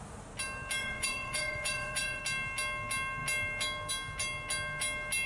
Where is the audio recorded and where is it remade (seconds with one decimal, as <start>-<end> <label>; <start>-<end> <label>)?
0.0-0.8 recorded; 0.8-2.2 remade; 2.2-5.3 recorded